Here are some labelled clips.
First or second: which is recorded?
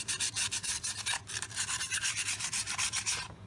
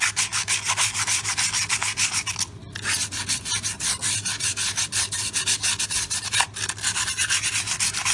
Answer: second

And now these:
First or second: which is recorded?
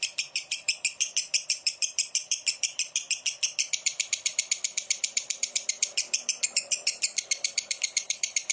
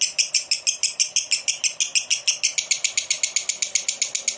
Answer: second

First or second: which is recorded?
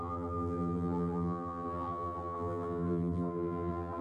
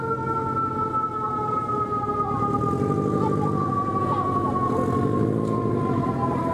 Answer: second